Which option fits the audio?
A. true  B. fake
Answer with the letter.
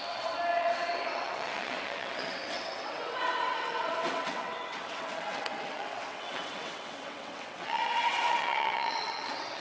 B